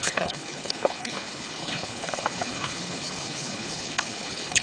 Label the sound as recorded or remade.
remade